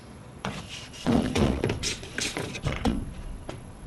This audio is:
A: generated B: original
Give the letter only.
A